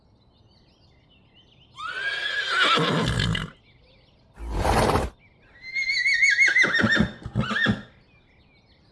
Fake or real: real